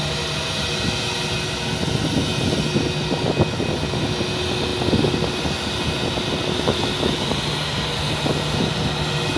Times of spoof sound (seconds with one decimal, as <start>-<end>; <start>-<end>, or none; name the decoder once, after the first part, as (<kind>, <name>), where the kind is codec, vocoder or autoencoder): none